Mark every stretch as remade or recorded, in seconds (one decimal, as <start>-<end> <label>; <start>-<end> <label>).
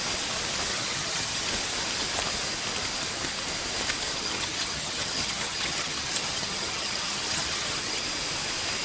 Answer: 0.0-0.7 recorded; 0.7-1.5 remade; 1.5-4.1 recorded; 4.1-8.0 remade; 8.0-8.8 recorded